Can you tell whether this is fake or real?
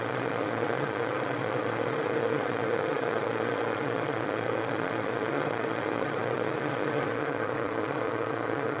fake